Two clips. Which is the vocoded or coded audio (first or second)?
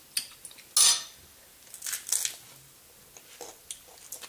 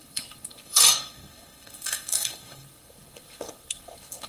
second